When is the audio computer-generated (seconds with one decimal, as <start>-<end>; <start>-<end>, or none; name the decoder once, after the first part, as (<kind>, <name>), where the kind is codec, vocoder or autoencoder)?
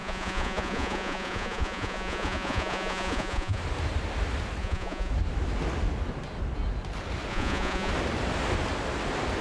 0.0-3.6 (vocoder, Vocos); 4.6-5.1; 7.3-7.9